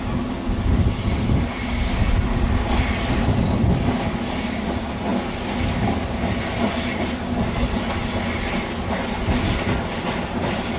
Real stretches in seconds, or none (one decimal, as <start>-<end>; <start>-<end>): 0.0-10.8